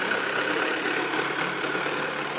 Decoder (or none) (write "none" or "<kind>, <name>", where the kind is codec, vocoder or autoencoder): vocoder, BigVGAN v2